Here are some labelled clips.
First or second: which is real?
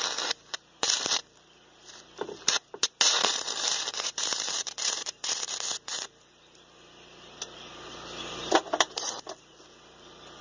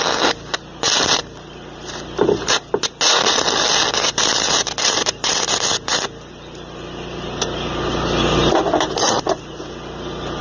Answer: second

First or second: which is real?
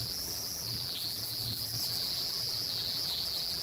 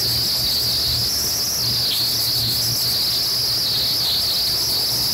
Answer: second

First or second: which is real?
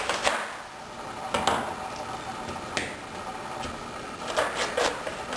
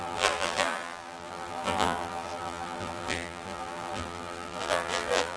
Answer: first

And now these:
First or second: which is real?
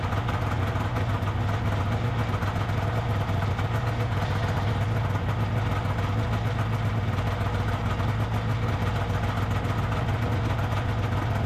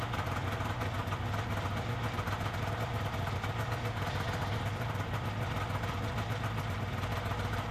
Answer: first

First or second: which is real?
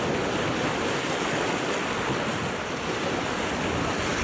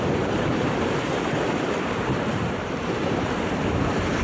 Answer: first